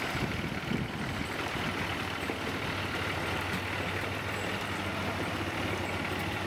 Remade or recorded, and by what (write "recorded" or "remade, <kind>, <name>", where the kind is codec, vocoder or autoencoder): recorded